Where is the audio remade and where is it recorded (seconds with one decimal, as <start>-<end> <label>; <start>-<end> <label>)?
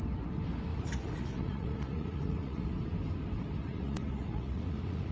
0.0-0.7 recorded; 0.7-2.6 remade; 2.6-3.6 recorded; 3.6-5.1 remade